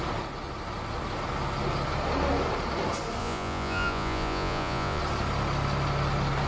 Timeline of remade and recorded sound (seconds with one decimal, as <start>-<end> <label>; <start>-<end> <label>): 0.0-3.2 recorded; 3.2-5.0 remade; 5.0-6.5 recorded